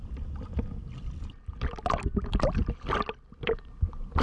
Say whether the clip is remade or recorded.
recorded